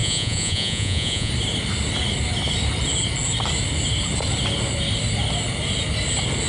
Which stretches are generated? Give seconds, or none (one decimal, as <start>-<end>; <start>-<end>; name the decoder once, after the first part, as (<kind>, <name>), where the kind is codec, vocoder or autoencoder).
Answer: 0.0-1.3 (vocoder, Vocos)